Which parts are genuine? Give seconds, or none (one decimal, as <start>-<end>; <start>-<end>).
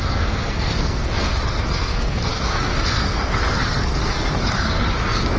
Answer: none